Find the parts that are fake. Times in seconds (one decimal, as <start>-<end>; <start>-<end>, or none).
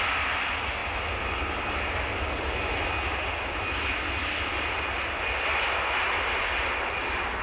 none